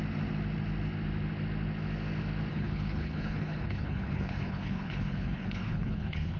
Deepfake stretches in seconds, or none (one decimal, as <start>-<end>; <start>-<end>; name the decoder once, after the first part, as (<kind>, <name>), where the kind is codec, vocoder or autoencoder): 2.5-6.4 (codec, HILCodec)